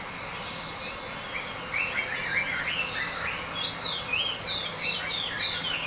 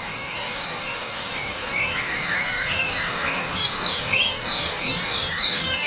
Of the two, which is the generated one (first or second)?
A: second